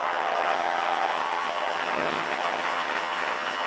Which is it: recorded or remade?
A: remade